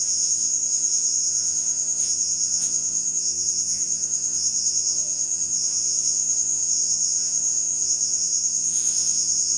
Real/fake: fake